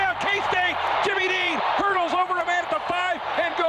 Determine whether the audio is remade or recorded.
remade